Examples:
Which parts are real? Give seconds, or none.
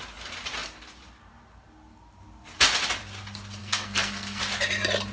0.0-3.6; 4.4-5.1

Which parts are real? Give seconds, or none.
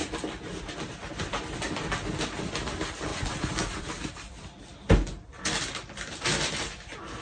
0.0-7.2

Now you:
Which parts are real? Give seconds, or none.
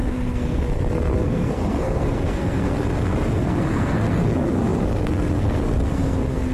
none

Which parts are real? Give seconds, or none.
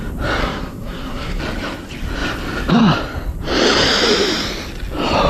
0.0-0.4; 1.4-5.3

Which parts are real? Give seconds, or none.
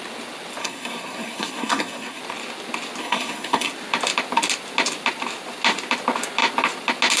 0.0-0.6; 2.2-3.0; 3.7-7.2